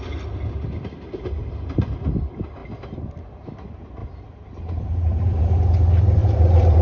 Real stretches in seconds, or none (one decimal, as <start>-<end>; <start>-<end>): 0.0-4.0; 5.4-6.2